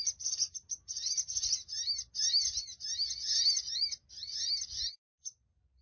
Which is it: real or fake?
real